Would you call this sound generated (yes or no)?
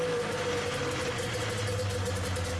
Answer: no